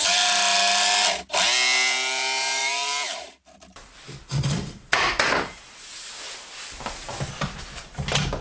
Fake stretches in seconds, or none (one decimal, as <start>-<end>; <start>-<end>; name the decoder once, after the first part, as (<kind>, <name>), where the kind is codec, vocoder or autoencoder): 2.6-7.3 (vocoder, BigVGAN v2)